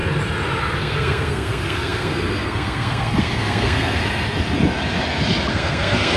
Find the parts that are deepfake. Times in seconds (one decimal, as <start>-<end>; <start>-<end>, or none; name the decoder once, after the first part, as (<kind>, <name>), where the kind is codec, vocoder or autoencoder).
0.8-4.0 (codec, SNAC); 5.5-6.2